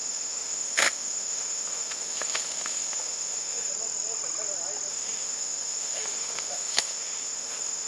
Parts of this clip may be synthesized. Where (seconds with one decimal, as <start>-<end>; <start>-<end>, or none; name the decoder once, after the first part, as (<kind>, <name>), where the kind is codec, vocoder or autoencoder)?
0.0-3.7 (autoencoder, DAC-VAE); 4.9-7.9